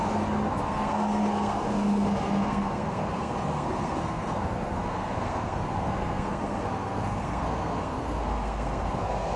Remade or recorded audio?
remade